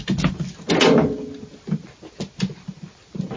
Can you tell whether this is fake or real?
real